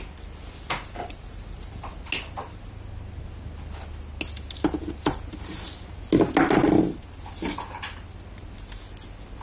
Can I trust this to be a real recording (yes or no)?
yes